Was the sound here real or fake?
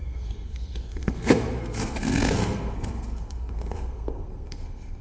fake